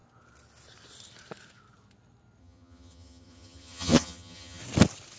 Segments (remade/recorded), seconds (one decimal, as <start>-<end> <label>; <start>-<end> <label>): 0.0-2.4 recorded; 2.4-4.6 remade; 4.6-5.2 recorded